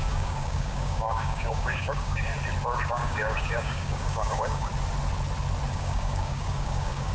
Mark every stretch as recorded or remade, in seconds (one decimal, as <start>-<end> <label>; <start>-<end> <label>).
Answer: 0.0-2.3 remade; 2.3-2.9 recorded; 2.9-4.7 remade; 4.7-5.7 recorded; 5.7-7.1 remade